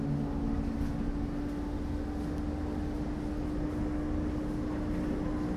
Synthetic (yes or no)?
no